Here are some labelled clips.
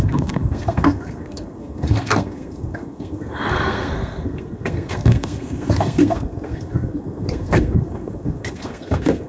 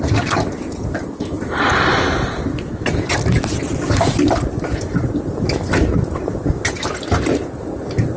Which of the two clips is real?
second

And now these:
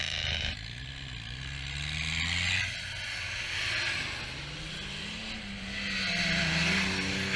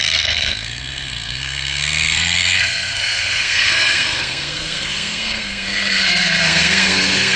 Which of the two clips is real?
first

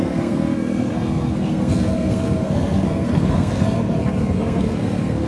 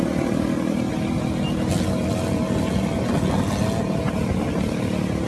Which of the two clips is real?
second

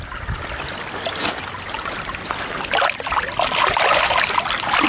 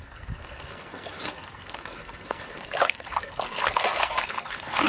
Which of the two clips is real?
first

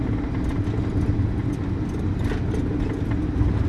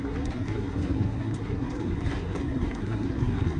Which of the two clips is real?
first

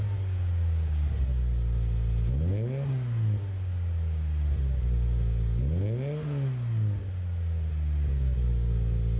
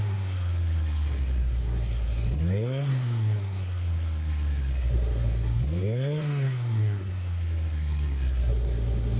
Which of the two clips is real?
first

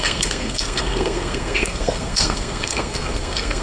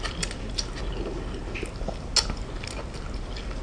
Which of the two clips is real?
second